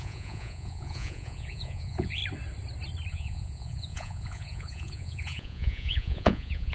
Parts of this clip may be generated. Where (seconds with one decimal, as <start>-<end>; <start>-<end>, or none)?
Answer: 0.0-2.2; 3.1-6.7